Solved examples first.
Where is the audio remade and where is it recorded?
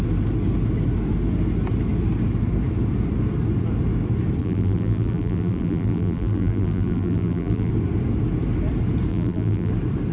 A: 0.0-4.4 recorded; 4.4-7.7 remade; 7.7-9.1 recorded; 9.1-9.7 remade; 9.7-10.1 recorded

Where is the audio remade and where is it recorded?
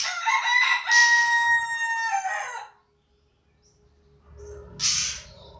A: 0.0-5.6 recorded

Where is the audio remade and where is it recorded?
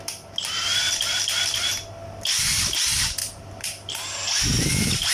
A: 0.0-0.7 recorded; 0.7-1.2 remade; 1.2-3.2 recorded; 3.2-3.9 remade; 3.9-5.1 recorded